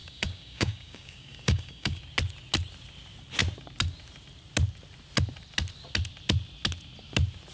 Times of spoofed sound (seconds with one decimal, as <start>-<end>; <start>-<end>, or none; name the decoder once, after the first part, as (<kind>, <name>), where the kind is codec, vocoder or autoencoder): 0.0-2.0 (codec, DAC)